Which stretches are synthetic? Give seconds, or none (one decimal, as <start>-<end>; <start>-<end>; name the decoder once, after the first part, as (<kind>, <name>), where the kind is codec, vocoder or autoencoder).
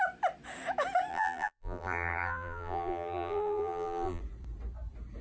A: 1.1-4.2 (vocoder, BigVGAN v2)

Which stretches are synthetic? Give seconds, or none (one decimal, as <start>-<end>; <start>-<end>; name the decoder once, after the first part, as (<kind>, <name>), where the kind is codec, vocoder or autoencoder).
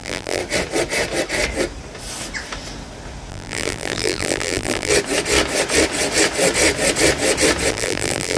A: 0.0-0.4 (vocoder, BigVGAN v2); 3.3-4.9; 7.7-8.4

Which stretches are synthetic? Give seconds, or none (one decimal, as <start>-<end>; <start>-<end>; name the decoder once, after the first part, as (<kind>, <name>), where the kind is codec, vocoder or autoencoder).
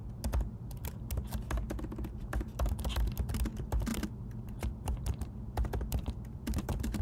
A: 3.9-7.0 (vocoder, BigVGAN v2)